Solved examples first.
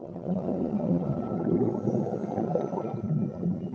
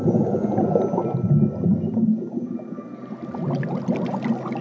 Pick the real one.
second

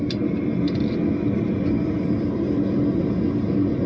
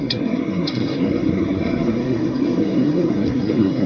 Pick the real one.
first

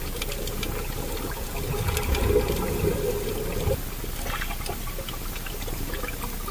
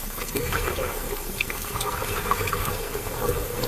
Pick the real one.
first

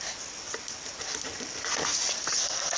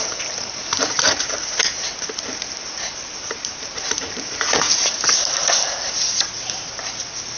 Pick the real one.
first